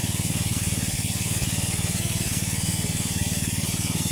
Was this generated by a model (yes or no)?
yes